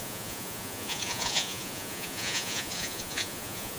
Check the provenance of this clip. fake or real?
fake